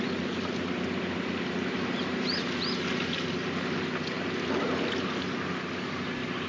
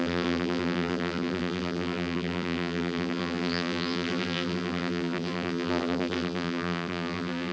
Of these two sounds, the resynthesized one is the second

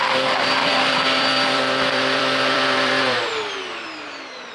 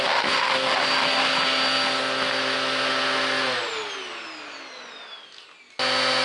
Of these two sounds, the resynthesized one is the first